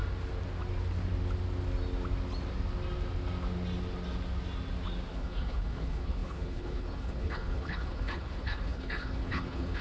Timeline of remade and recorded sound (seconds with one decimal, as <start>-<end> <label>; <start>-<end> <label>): 0.0-5.1 recorded; 5.1-9.8 remade